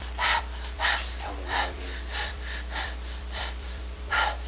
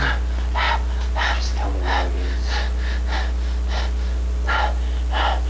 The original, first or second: second